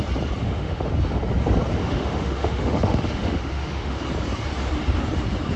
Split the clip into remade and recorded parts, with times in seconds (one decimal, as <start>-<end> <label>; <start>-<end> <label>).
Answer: 0.0-0.4 recorded; 0.4-0.9 remade; 0.9-1.8 recorded; 1.8-4.0 remade; 4.0-5.6 recorded